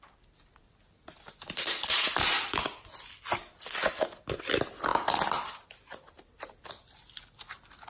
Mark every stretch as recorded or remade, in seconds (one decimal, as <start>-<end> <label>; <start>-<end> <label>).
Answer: 0.0-7.9 recorded